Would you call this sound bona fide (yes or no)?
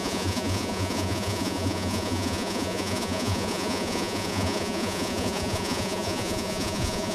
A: no